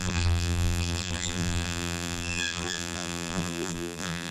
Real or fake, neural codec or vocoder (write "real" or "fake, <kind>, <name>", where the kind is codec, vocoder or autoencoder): fake, vocoder, BigVGAN v2